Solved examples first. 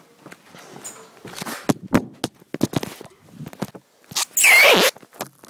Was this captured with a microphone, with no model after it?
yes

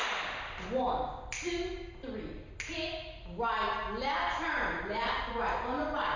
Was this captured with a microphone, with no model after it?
yes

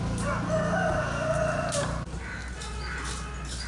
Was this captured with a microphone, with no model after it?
yes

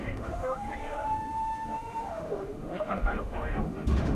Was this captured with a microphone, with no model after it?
no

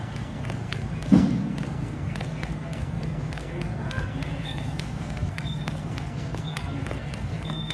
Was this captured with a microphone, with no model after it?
no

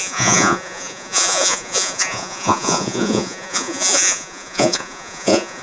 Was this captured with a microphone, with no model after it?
no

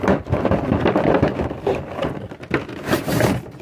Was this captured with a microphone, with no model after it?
yes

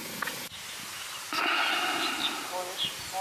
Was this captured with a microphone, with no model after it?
yes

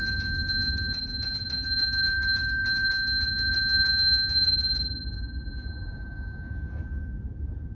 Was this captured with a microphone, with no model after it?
yes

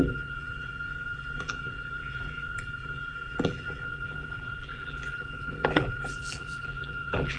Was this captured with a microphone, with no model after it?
no